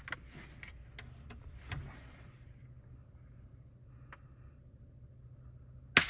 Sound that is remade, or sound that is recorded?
recorded